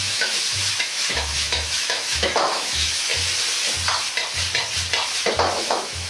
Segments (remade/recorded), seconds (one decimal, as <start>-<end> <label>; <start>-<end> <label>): 0.0-3.1 remade; 3.1-5.5 recorded; 5.5-6.1 remade